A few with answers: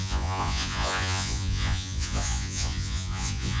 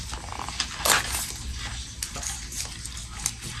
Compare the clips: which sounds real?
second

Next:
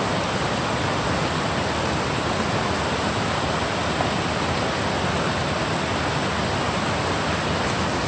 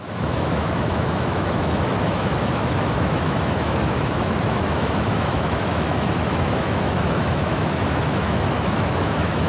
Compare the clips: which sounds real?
first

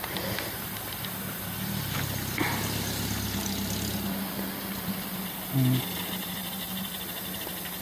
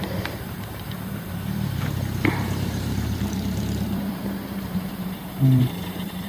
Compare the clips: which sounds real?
first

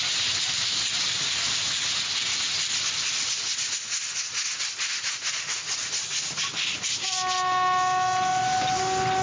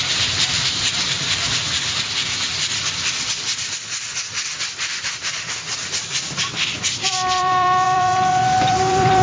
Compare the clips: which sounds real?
first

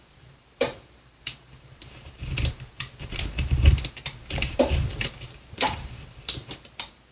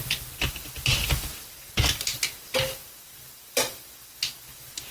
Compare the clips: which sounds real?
second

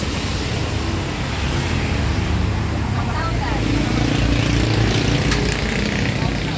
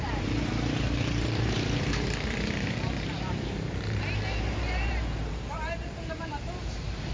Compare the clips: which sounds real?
first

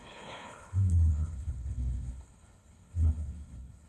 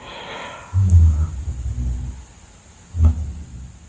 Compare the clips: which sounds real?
second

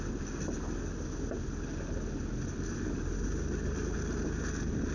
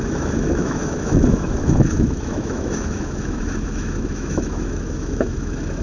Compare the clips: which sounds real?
first